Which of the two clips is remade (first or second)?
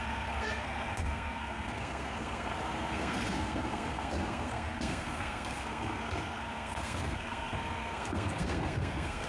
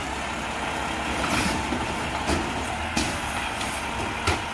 first